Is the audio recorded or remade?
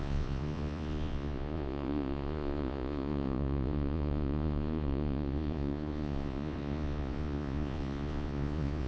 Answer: remade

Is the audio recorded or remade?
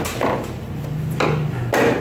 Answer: recorded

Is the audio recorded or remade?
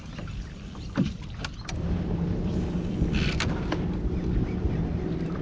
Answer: recorded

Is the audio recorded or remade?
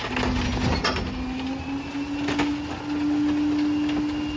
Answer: recorded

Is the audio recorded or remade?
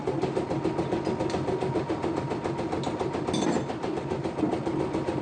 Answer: recorded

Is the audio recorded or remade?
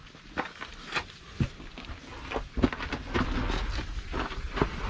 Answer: recorded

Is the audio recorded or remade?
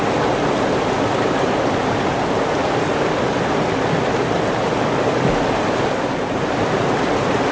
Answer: recorded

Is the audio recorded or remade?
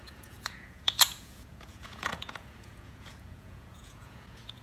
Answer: remade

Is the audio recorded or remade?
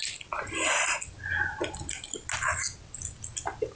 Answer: recorded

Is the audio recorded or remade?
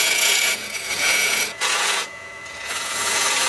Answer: remade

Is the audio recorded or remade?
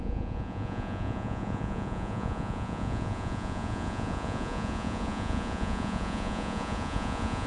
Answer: remade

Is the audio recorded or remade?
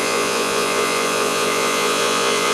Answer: remade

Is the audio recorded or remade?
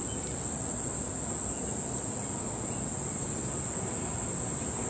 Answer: recorded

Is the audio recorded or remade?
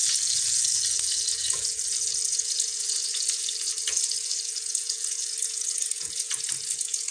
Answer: remade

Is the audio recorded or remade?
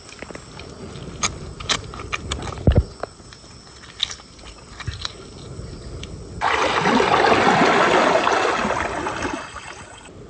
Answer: recorded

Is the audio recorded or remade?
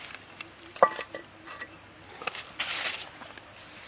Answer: recorded